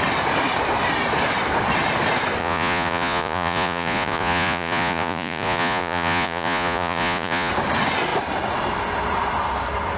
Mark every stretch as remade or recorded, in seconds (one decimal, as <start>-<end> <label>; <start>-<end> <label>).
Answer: 0.0-2.4 recorded; 2.4-7.5 remade; 7.5-10.0 recorded

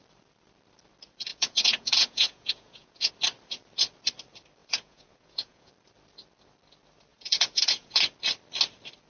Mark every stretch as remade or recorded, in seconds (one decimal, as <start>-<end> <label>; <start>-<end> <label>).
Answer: 0.0-1.3 recorded; 1.3-3.1 remade; 3.1-4.6 recorded; 4.6-5.7 remade; 5.7-7.1 recorded; 7.1-8.1 remade; 8.1-9.1 recorded

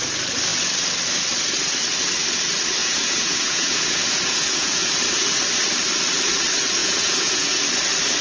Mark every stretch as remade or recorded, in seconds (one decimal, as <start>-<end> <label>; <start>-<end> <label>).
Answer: 0.0-2.8 recorded; 2.8-4.9 remade; 4.9-6.8 recorded; 6.8-7.6 remade; 7.6-8.2 recorded